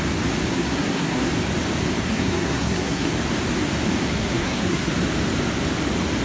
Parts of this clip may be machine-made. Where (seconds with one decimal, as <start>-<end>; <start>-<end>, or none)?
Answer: 0.5-1.3; 2.0-3.1; 4.0-4.9